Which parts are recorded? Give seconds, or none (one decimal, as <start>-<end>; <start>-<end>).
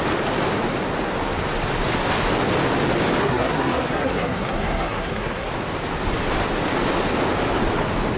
0.0-3.2; 5.5-8.2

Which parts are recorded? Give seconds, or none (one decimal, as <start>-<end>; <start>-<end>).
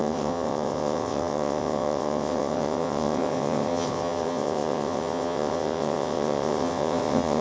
none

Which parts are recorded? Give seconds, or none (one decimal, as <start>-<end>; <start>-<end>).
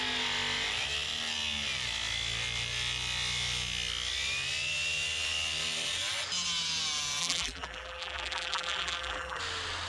0.0-7.2; 9.4-9.9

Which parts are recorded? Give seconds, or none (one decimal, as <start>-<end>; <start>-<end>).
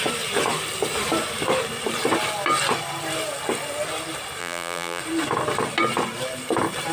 0.0-4.4; 5.0-6.9